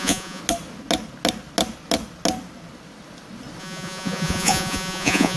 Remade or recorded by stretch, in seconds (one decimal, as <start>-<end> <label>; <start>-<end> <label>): 0.0-0.4 remade; 0.4-3.6 recorded; 3.6-5.4 remade